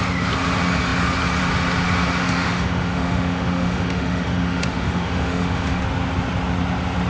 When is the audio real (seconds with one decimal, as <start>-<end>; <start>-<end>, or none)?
0.0-2.2; 5.8-7.1